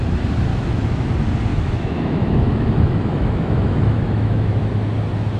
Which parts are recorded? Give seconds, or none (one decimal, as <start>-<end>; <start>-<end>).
0.0-0.5; 1.1-1.5; 4.7-5.4